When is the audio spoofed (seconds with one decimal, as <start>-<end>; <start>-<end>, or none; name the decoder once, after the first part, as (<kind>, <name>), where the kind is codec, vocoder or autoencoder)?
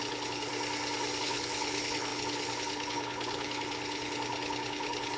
0.0-0.5 (codec, HILCodec); 1.2-5.2